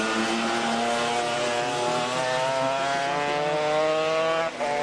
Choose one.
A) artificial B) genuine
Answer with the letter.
B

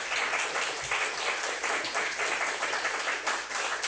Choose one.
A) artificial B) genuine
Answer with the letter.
B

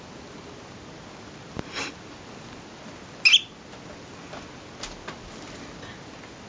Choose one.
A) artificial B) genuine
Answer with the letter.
B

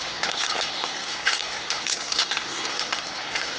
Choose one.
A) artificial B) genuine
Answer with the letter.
A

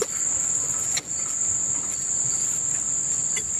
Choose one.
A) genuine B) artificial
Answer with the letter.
B